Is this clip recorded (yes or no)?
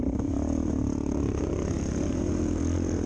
no